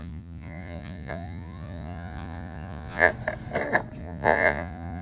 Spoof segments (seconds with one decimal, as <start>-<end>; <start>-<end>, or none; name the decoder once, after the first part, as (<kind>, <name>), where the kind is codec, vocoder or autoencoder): 0.0-3.1 (vocoder, Vocos); 4.0-5.0